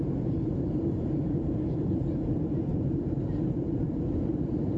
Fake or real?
fake